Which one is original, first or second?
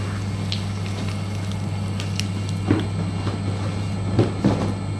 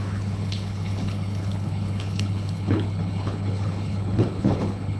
first